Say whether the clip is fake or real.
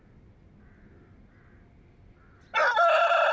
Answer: real